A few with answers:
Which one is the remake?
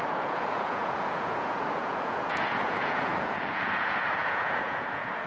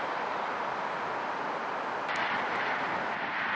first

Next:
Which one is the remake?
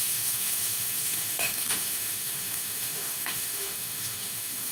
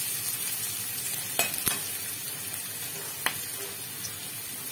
first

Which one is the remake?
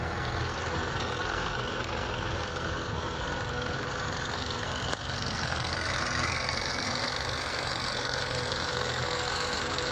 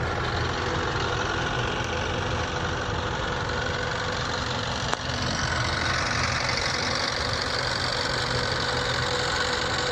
first